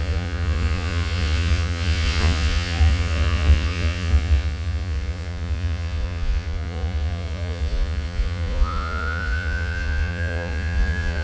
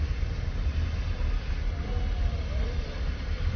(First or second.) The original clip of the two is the second